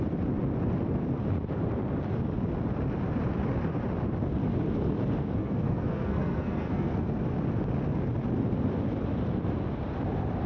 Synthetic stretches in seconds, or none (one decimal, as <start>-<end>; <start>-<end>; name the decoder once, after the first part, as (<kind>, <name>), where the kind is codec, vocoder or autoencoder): 5.4-7.2 (codec, SNAC)